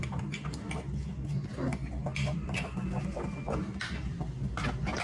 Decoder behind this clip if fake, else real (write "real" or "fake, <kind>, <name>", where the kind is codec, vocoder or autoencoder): real